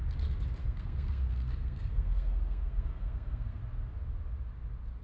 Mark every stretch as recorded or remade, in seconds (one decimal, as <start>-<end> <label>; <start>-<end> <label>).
0.0-0.6 recorded; 0.6-3.6 remade; 3.6-5.0 recorded